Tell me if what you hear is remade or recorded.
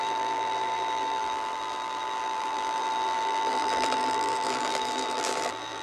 remade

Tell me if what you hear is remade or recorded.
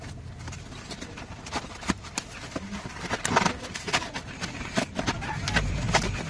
remade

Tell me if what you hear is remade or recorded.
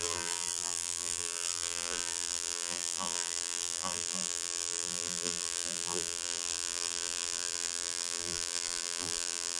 remade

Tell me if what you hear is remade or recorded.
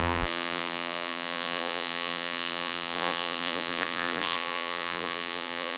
remade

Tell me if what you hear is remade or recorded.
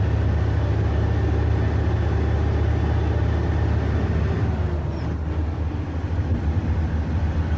recorded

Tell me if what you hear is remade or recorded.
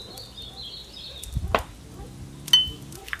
recorded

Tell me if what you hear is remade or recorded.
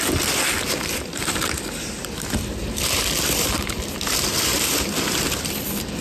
remade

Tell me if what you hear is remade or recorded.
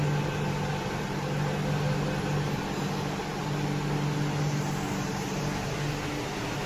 recorded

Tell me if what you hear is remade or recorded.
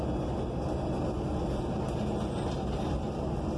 recorded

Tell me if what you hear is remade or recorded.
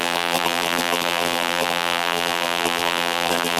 remade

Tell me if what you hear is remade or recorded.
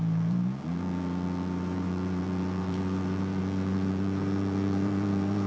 remade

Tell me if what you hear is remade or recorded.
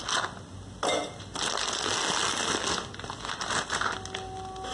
recorded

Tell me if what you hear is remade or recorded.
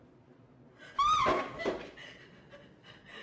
recorded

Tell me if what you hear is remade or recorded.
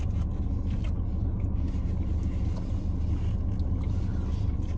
recorded